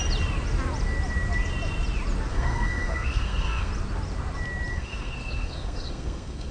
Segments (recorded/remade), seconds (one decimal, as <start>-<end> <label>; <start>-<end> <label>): 0.0-2.3 recorded; 2.3-3.7 remade; 3.7-4.7 recorded; 4.7-6.5 remade